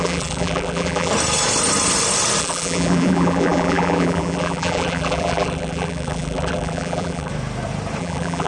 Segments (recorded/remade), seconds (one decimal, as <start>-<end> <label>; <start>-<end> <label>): 0.0-1.1 remade; 1.1-2.4 recorded; 2.4-7.3 remade; 7.3-8.0 recorded; 8.0-8.5 remade

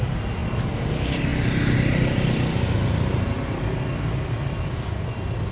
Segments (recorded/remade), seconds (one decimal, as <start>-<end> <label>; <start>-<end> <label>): 0.0-0.4 remade; 0.4-0.9 recorded; 0.9-1.3 remade; 1.3-4.6 recorded; 4.6-5.5 remade

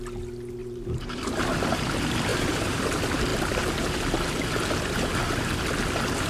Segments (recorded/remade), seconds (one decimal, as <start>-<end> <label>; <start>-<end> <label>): 0.0-0.6 recorded; 0.6-1.2 remade; 1.2-2.3 recorded; 2.3-2.8 remade; 2.8-6.3 recorded

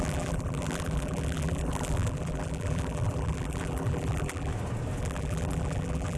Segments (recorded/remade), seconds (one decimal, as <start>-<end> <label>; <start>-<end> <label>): 0.0-4.5 remade; 4.5-5.0 recorded; 5.0-6.2 remade

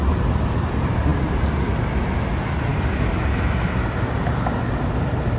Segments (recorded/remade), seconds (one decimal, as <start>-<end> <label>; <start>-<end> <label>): 0.0-5.4 recorded

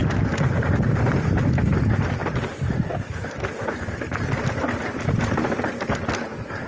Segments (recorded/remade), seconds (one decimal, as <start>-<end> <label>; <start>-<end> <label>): 0.0-2.2 recorded; 2.2-5.8 remade; 5.8-6.7 recorded